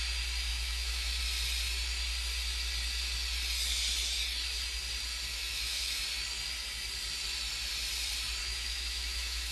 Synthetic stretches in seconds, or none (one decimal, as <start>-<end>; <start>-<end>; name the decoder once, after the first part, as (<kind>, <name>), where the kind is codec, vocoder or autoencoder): 0.5-1.2 (autoencoder, DAC-VAE); 5.3-6.0; 8.4-9.5